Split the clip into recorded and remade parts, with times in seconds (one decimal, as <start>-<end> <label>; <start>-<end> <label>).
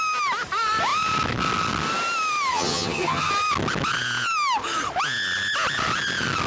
0.0-2.5 recorded; 2.5-3.3 remade; 3.3-6.5 recorded